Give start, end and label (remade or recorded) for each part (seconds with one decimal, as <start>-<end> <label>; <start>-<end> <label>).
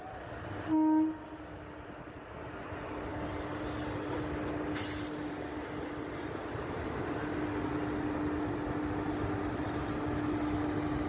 0.0-11.1 recorded